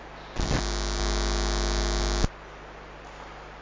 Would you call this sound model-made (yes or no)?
no